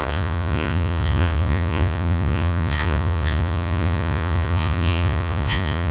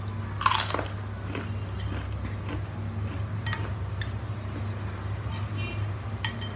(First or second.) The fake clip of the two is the first